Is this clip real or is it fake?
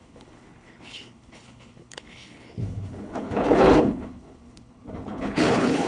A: fake